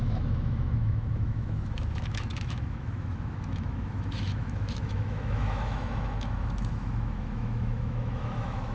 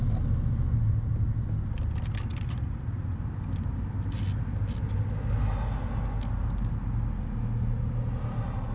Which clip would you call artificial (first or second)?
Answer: first